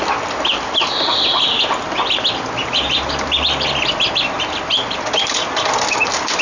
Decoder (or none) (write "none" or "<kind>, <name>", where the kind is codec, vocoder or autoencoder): none